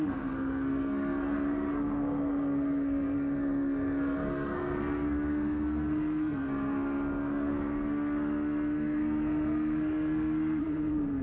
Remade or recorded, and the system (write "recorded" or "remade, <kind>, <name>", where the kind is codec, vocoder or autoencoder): remade, codec, SNAC